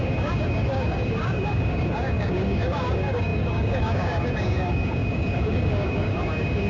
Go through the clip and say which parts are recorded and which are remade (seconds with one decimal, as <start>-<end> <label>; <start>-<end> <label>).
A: 0.0-6.7 remade